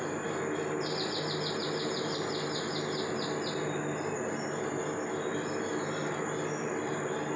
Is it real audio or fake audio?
real